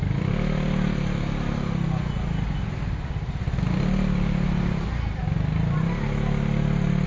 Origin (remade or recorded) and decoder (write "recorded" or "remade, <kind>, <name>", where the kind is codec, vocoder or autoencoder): recorded